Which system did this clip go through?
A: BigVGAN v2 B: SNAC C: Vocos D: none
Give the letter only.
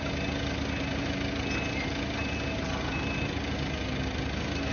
D